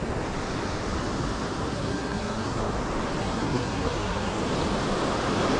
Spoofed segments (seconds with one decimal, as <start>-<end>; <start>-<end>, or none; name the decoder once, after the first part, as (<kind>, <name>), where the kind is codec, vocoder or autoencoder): 1.7-2.7 (codec, SNAC); 3.2-4.4